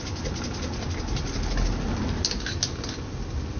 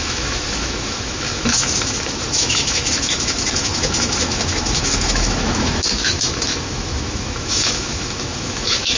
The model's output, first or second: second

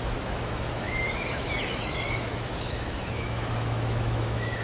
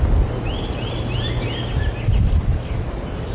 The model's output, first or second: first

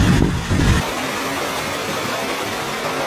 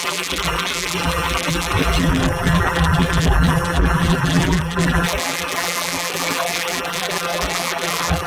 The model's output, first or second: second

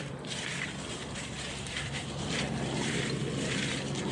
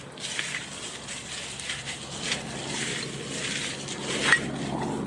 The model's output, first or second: first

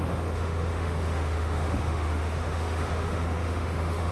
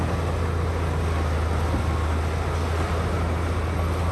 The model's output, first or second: first